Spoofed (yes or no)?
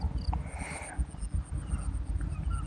no